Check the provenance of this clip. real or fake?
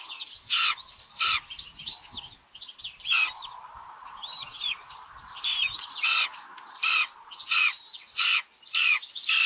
real